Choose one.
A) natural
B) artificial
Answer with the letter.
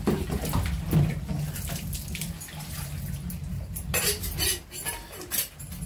A